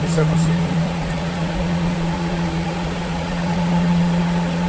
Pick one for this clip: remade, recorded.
remade